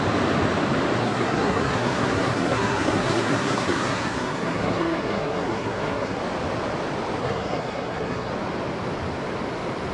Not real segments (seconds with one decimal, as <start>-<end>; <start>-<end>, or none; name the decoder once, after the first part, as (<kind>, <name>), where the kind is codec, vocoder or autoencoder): 1.0-6.2 (codec, SNAC); 7.2-8.3